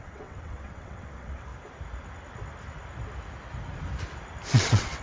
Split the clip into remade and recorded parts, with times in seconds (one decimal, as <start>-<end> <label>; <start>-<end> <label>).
0.0-1.5 remade; 1.5-4.5 recorded; 4.5-5.0 remade